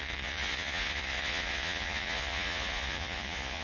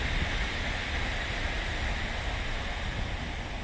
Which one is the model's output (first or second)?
first